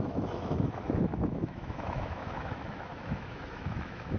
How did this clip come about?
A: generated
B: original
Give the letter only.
A